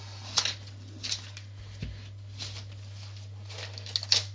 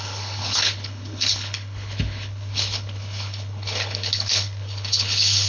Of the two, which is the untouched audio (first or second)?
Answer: first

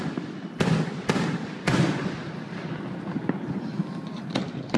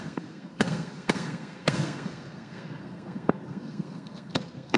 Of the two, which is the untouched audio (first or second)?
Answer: first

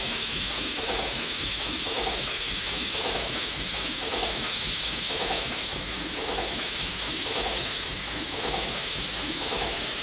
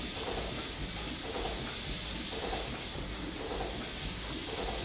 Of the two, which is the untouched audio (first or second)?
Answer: second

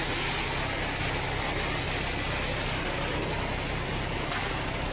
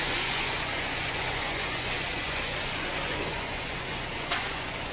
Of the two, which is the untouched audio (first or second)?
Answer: first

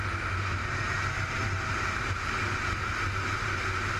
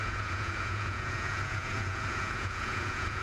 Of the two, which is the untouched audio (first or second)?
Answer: first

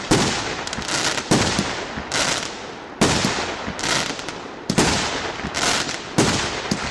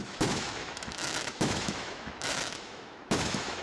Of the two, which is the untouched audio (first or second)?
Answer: first